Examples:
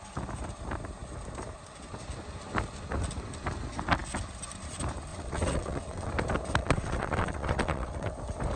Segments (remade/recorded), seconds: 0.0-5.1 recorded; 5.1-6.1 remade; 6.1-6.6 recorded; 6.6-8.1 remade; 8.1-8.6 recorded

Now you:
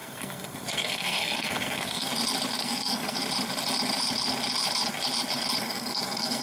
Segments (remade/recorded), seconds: 0.0-2.1 remade; 2.1-2.6 recorded; 2.6-3.2 remade; 3.2-5.6 recorded; 5.6-6.4 remade

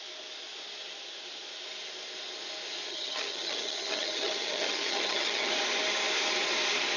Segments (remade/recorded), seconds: 0.0-2.9 recorded; 2.9-5.5 remade; 5.5-7.0 recorded

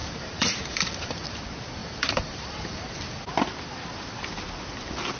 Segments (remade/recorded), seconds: 0.0-1.4 remade; 1.4-1.8 recorded; 1.8-2.6 remade; 2.6-5.2 recorded

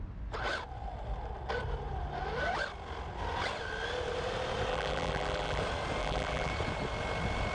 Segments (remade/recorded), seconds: 0.0-4.7 recorded; 4.7-5.6 remade; 5.6-6.0 recorded; 6.0-6.5 remade; 6.5-7.5 recorded

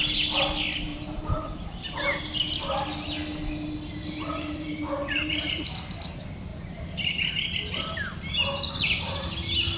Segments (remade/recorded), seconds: 0.0-0.9 recorded; 0.9-2.2 remade; 2.2-4.0 recorded; 4.0-5.7 remade; 5.7-9.8 recorded